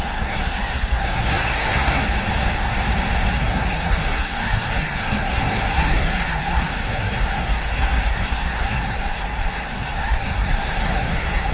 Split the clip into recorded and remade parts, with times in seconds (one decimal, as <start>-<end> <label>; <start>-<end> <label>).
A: 0.0-2.0 remade; 2.0-3.3 recorded; 3.3-11.5 remade